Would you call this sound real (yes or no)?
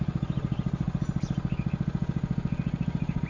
yes